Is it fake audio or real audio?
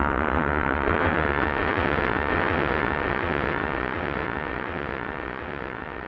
fake